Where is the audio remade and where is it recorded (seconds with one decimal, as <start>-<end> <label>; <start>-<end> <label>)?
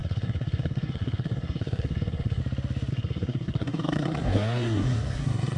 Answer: 0.0-2.4 remade; 2.4-2.9 recorded; 2.9-5.6 remade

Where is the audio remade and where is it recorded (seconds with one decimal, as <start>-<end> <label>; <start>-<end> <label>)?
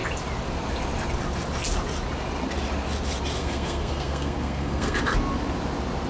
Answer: 0.0-3.4 recorded; 3.4-5.0 remade; 5.0-6.1 recorded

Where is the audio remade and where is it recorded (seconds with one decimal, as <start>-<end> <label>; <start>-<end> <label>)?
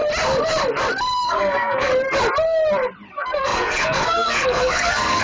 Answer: 0.0-1.2 recorded; 1.2-1.9 remade; 1.9-3.1 recorded; 3.1-5.2 remade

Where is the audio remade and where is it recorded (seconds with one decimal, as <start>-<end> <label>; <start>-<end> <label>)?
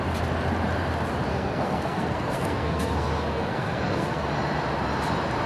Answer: 0.0-1.3 recorded; 1.3-4.3 remade; 4.3-5.5 recorded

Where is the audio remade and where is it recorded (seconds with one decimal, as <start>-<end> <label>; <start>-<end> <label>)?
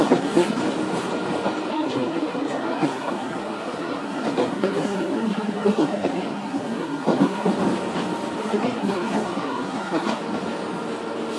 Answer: 0.0-0.6 remade; 0.6-1.7 recorded; 1.7-7.5 remade; 7.5-8.4 recorded; 8.4-10.2 remade; 10.2-11.4 recorded